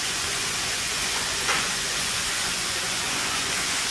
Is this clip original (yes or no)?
no